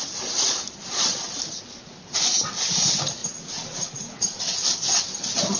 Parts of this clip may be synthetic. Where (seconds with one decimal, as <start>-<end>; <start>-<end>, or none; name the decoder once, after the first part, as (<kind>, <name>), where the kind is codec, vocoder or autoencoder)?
3.2-4.4 (vocoder, Vocos)